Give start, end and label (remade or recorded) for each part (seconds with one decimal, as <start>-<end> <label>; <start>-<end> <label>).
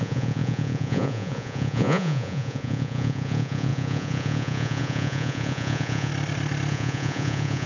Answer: 0.0-6.1 remade; 6.1-6.7 recorded; 6.7-7.7 remade